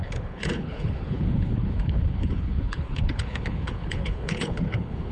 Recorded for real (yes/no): no